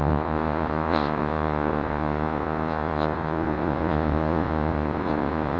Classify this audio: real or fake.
fake